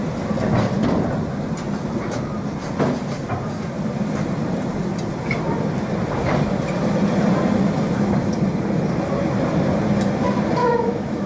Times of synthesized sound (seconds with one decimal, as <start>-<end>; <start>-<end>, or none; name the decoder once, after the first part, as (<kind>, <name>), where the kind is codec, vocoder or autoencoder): 10.6-11.3 (autoencoder, DAC-VAE)